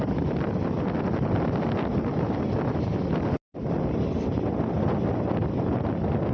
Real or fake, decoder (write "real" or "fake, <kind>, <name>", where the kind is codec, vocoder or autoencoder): real